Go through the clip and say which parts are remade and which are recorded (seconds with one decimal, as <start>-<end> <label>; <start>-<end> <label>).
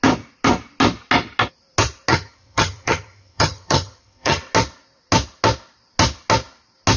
0.0-2.1 recorded; 2.1-4.4 remade; 4.4-7.0 recorded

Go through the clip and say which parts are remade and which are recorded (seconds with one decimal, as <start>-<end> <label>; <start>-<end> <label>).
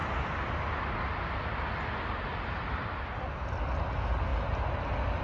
0.0-5.2 recorded